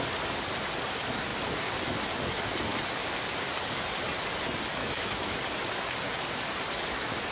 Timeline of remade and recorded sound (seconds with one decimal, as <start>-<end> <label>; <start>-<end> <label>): 0.0-4.8 recorded; 4.8-5.4 remade; 5.4-7.3 recorded